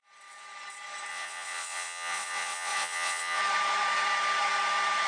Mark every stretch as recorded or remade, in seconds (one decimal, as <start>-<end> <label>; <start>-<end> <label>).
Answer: 0.0-1.1 recorded; 1.1-3.4 remade; 3.4-5.1 recorded